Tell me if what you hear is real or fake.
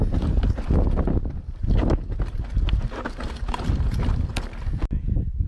real